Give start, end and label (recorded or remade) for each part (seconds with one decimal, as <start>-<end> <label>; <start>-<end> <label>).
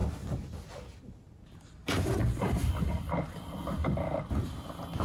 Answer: 0.0-5.0 recorded